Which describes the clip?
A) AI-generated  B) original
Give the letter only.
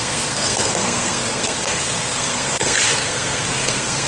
A